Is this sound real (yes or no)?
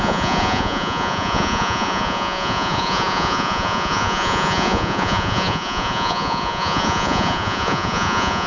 no